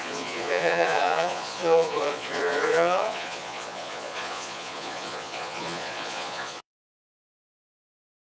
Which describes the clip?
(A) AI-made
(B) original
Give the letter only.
A